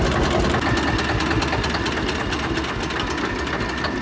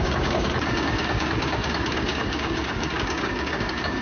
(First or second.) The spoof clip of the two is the second